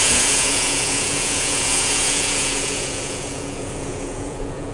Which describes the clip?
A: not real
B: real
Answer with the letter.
A